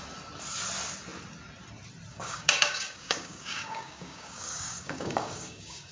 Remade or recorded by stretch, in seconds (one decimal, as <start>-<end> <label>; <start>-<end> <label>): 0.0-2.1 recorded; 2.1-5.9 remade